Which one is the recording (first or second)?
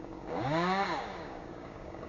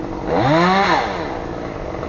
second